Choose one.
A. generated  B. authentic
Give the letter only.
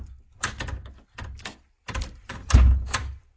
B